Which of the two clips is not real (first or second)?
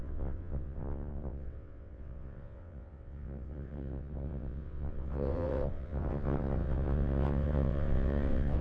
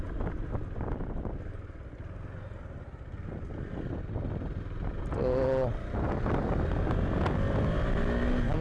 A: first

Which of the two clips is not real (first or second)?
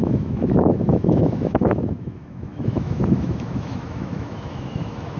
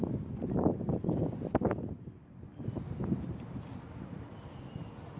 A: first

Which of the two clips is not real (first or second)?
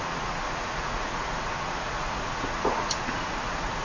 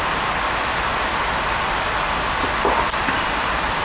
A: first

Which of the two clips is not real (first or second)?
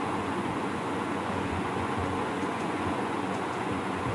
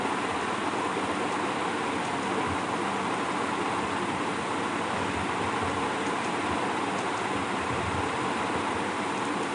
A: first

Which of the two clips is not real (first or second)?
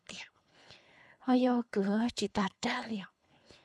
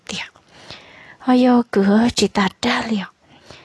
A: first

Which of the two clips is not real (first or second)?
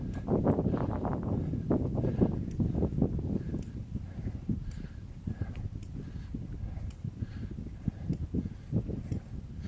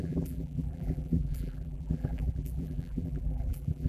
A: second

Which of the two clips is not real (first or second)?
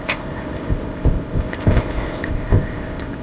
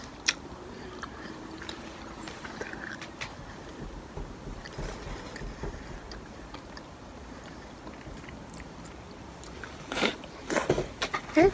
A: first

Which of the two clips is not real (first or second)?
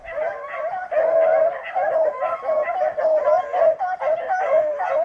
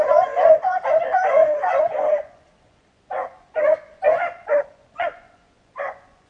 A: second